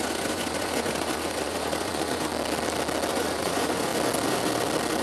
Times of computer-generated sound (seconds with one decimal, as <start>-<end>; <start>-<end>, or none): 0.0-2.3; 3.1-3.9